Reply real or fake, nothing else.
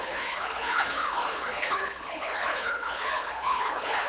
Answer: fake